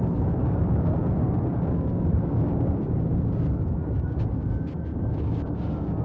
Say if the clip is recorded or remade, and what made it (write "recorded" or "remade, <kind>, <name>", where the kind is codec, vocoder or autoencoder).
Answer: remade, codec, DAC